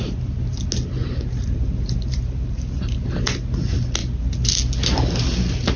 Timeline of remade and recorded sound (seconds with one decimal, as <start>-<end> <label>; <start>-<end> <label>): 0.0-1.0 recorded; 1.0-3.0 remade; 3.0-5.8 recorded